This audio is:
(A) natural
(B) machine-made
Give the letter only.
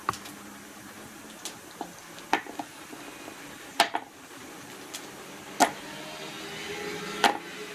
A